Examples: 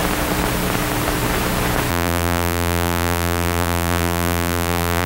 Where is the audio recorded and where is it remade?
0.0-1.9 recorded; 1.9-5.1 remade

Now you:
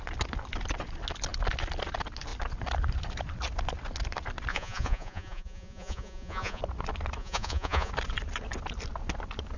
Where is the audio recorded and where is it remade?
0.0-4.5 recorded; 4.5-6.6 remade; 6.6-7.2 recorded; 7.2-7.9 remade; 7.9-9.6 recorded